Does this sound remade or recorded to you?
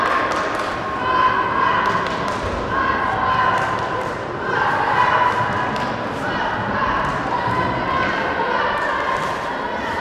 recorded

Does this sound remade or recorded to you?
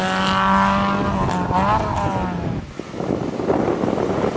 recorded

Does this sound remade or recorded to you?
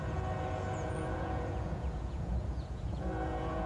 remade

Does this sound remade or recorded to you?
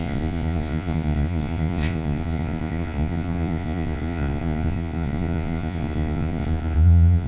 remade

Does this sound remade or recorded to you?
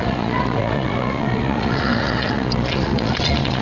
remade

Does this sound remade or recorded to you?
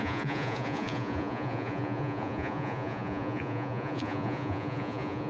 remade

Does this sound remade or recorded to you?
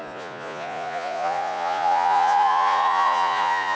remade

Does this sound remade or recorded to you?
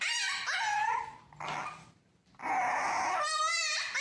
recorded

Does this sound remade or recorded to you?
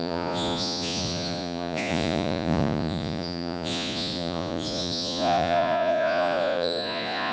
remade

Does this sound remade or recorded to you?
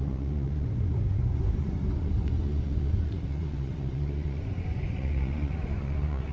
remade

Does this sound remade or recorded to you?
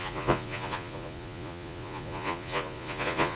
remade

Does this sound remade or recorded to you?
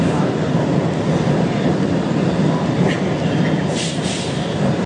recorded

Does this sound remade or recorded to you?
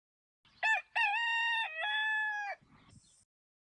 recorded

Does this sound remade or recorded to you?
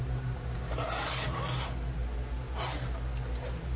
recorded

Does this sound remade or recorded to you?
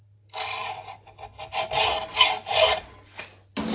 recorded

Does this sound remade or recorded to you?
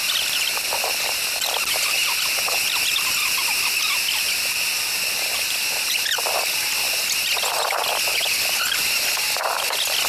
recorded